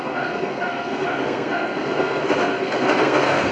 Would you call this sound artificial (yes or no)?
yes